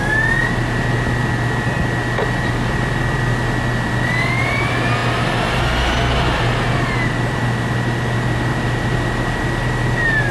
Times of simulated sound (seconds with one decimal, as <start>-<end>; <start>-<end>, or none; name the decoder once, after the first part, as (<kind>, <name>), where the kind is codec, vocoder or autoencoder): none